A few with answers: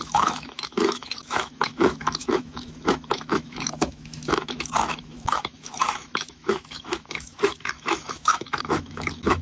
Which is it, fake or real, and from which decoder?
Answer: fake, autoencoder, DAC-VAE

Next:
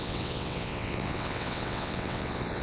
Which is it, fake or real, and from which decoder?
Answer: fake, vocoder, WaveNeXt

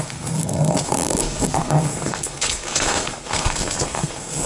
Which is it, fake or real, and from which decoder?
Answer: fake, codec, SNAC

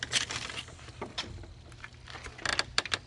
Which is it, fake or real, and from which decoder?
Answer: real